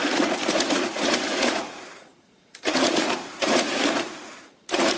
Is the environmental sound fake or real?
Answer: fake